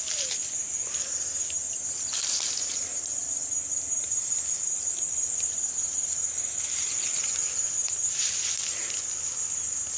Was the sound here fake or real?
real